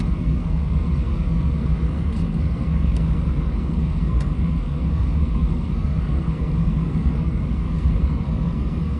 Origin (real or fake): fake